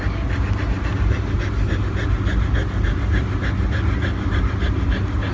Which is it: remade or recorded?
recorded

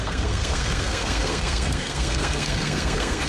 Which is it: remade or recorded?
remade